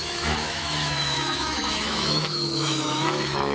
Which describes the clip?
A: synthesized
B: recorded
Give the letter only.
A